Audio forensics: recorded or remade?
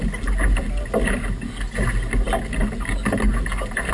recorded